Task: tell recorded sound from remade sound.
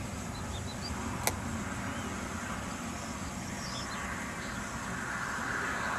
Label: recorded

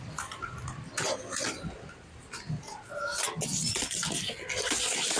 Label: recorded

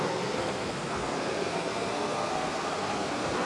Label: remade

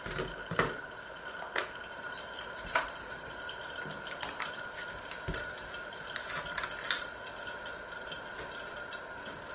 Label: recorded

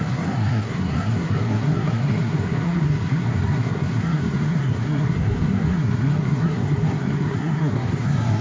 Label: remade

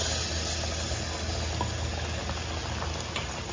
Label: recorded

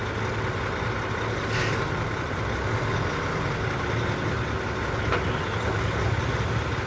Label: recorded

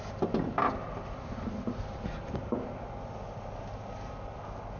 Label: recorded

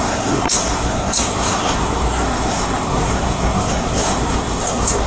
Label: remade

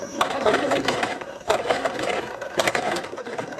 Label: remade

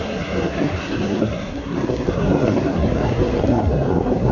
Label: remade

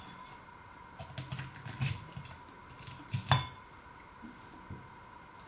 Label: recorded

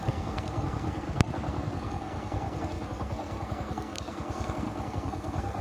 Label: remade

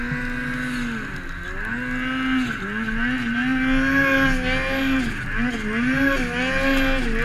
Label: recorded